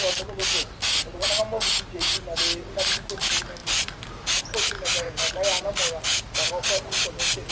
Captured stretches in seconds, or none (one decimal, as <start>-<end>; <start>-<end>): 0.0-7.5